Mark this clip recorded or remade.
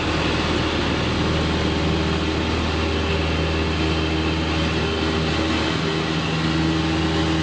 recorded